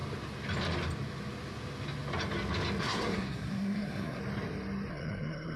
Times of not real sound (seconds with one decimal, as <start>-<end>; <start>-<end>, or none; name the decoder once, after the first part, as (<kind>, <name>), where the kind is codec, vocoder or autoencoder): 2.8-4.2 (codec, SNAC); 4.9-5.6